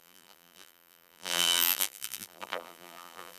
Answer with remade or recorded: remade